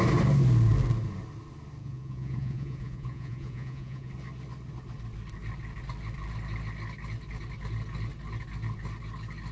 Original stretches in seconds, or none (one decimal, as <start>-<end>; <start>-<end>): 0.0-1.8; 4.1-9.5